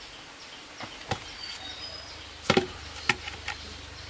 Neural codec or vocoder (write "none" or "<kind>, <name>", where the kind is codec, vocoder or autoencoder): none